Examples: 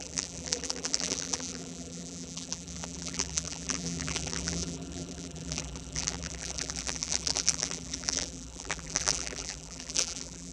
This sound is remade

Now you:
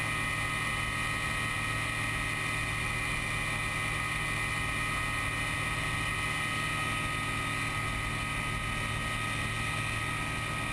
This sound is recorded